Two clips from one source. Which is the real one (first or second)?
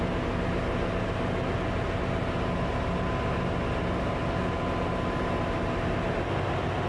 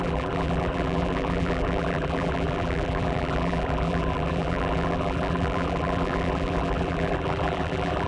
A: first